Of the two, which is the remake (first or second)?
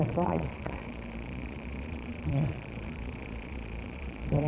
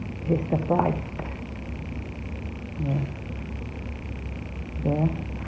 first